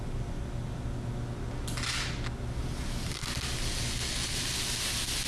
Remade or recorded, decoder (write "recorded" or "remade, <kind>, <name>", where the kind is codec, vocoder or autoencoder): recorded